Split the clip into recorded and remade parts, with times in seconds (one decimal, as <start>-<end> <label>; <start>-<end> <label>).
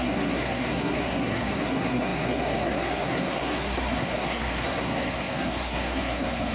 0.0-6.5 remade